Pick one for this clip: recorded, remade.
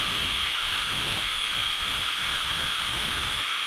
remade